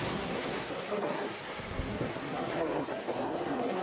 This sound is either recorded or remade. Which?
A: remade